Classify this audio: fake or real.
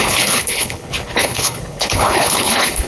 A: fake